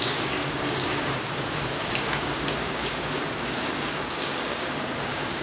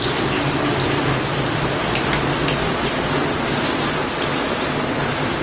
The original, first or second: second